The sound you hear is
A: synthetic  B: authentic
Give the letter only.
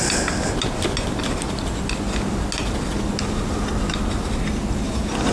B